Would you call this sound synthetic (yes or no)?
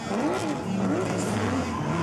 no